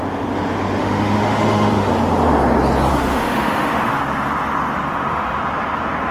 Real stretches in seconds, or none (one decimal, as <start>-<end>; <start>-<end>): 0.0-0.8; 1.9-2.9; 4.0-4.9; 5.4-6.1